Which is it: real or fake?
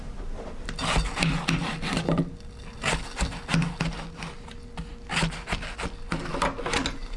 real